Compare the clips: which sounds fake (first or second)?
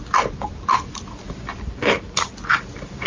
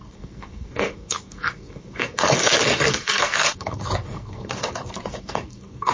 second